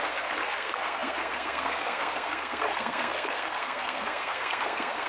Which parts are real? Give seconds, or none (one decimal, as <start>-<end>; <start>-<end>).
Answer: none